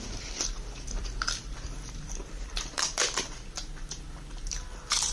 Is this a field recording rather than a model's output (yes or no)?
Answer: no